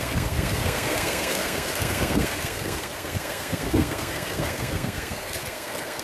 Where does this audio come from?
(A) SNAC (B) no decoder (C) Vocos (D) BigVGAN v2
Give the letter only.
A